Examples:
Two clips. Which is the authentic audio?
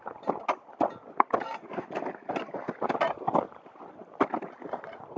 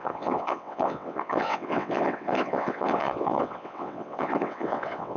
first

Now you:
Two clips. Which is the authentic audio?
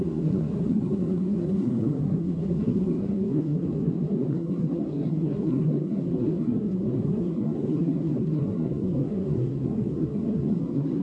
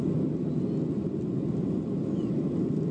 second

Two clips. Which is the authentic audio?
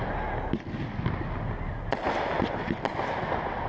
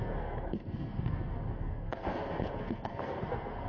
first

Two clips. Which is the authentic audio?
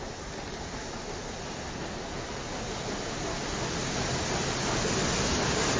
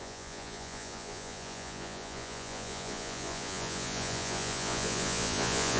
first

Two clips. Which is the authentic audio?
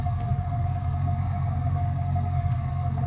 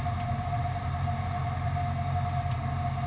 second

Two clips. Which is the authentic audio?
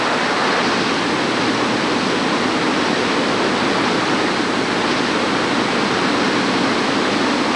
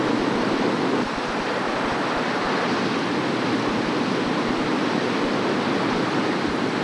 first